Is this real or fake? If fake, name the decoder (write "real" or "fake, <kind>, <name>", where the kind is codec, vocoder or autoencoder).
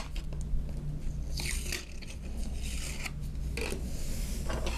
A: real